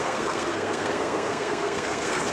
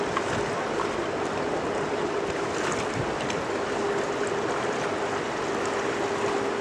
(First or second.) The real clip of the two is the second